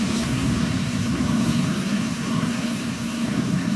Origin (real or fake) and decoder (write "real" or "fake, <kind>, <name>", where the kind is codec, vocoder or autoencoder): fake, codec, SNAC